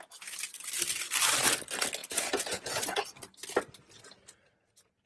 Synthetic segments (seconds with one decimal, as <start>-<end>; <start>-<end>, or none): 2.0-3.0